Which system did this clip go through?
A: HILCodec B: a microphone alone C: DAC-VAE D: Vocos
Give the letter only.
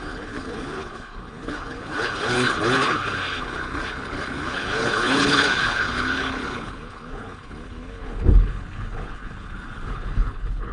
A